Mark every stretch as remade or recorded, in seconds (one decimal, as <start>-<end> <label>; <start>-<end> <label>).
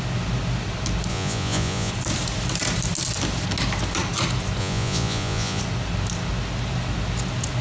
0.0-1.1 recorded; 1.1-1.9 remade; 1.9-4.6 recorded; 4.6-5.6 remade; 5.6-7.6 recorded